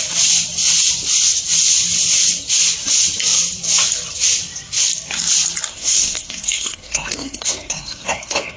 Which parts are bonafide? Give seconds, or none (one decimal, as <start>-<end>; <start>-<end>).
0.0-5.7